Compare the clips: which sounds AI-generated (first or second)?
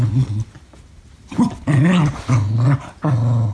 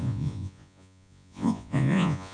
second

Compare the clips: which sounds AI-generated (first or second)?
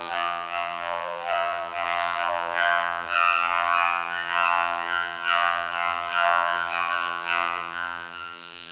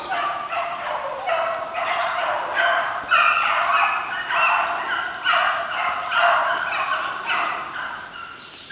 first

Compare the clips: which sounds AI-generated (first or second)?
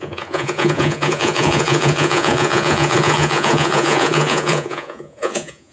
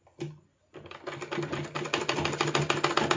first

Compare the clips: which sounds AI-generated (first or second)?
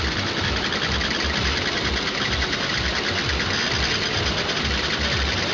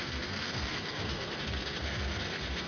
second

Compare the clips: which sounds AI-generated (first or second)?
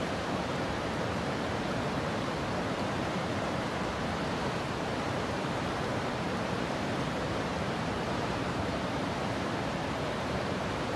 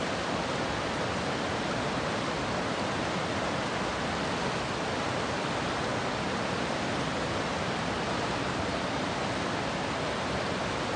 first